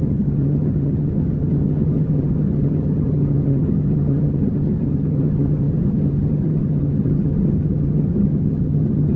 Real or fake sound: fake